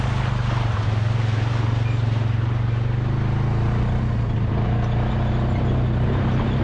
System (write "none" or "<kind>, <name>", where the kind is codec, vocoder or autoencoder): none